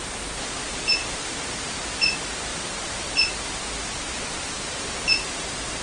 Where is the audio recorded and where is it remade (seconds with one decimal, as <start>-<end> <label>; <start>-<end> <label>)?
0.0-5.8 remade